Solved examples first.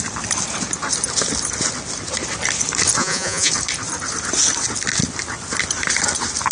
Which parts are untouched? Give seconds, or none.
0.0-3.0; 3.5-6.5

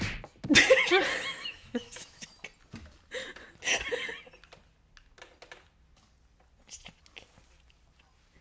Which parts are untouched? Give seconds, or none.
0.0-1.3; 2.3-8.4

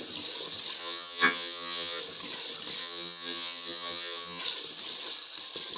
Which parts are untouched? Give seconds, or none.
0.0-0.8; 2.0-2.8; 4.4-5.8

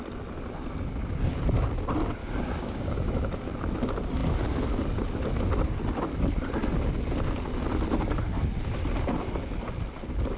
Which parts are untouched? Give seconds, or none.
0.0-2.2; 3.5-10.4

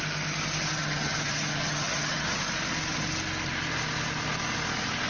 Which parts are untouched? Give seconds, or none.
0.0-0.7; 2.4-5.1

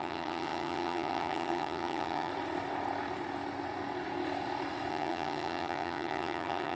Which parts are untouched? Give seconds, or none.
2.3-4.9

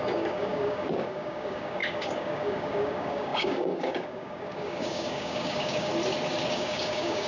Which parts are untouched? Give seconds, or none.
5.9-6.5

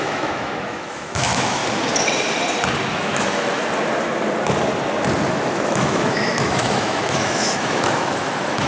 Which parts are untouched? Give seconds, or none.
1.6-2.9; 3.6-5.3